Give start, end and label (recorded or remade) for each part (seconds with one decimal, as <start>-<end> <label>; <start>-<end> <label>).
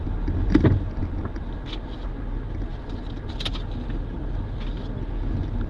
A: 0.0-5.7 recorded